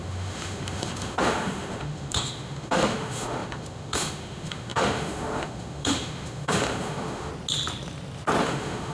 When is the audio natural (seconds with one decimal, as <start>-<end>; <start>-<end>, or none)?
7.3-8.4